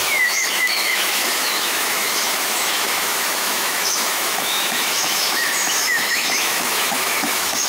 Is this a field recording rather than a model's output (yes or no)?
no